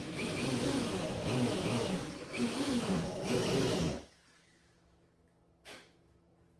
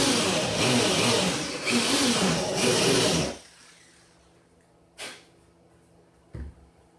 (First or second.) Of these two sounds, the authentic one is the second